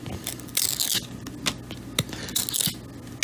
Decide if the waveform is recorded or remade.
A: recorded